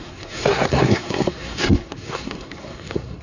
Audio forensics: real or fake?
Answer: fake